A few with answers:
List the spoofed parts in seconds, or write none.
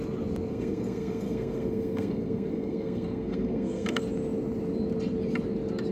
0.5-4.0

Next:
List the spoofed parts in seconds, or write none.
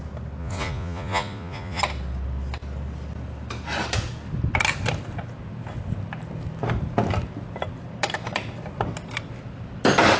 0.4-1.8